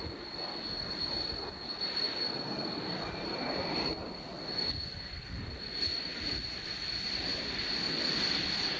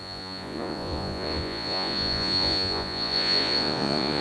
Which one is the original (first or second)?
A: first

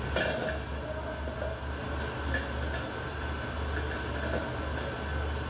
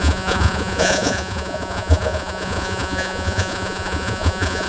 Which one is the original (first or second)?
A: first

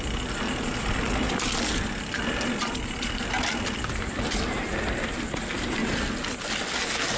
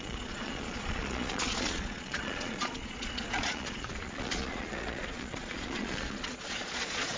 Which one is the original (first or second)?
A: first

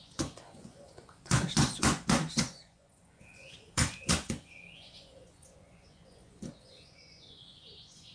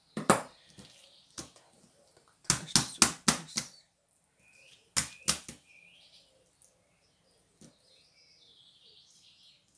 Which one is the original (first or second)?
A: second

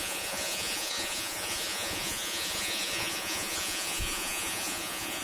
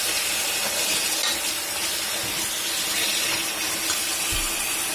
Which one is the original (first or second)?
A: second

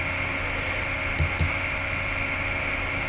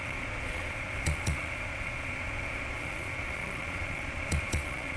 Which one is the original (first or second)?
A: first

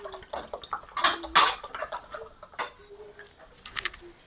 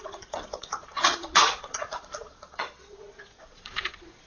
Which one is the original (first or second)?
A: first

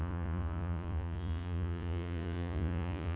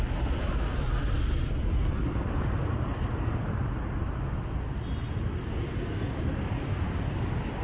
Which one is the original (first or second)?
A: second